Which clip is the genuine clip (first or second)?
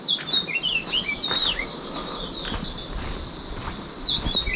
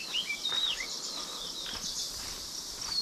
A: first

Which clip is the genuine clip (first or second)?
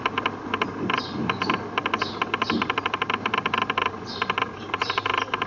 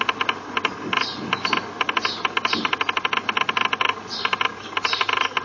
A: second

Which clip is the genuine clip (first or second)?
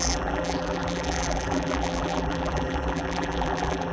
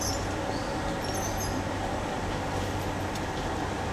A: second